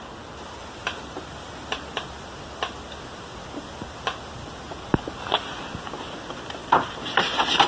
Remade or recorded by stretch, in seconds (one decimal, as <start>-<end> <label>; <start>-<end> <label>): 0.0-0.6 recorded; 0.6-2.0 remade; 2.0-7.7 recorded